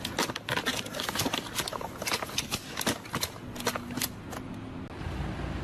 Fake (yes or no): no